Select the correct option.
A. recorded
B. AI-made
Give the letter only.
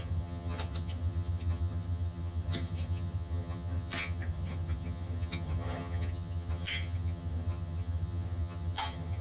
B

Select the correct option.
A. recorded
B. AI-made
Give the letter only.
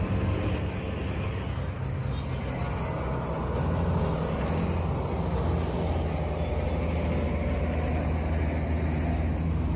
A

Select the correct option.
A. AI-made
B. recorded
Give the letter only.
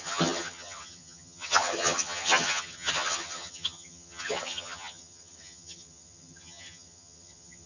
A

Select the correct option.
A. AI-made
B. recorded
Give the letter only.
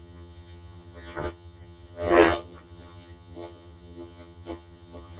A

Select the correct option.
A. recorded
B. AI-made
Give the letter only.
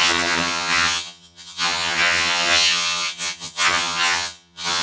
B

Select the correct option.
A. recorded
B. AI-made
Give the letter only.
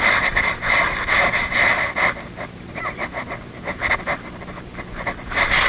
A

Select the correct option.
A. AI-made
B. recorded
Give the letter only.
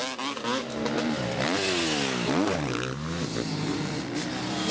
B